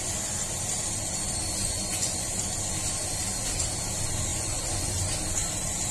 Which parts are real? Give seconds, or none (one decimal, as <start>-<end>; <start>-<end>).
0.0-1.6; 2.3-4.3; 4.9-5.9

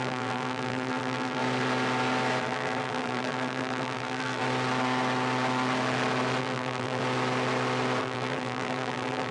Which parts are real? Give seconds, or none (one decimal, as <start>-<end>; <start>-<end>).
1.4-2.4; 4.4-6.4; 7.0-8.0

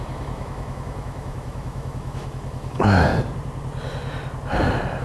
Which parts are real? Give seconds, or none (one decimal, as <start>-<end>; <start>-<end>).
3.1-5.0

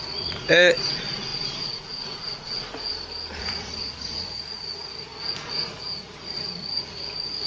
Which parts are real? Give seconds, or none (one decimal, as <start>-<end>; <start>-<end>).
2.9-3.4

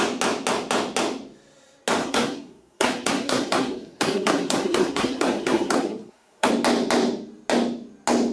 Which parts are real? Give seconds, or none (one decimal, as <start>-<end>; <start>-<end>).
0.0-2.0; 6.5-8.3

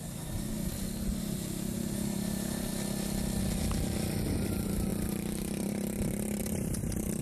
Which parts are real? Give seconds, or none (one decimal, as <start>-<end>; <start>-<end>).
0.5-1.2; 2.7-4.3